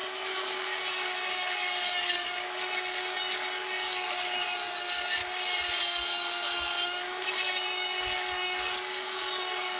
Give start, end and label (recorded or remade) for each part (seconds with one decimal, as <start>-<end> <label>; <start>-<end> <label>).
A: 0.0-5.2 remade; 5.2-5.8 recorded; 5.8-9.8 remade